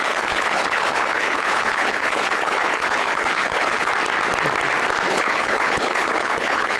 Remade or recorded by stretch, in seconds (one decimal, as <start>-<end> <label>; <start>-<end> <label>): 0.0-3.9 remade; 3.9-5.1 recorded; 5.1-6.8 remade